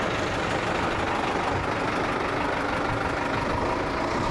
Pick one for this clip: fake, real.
real